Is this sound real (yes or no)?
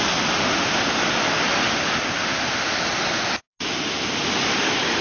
yes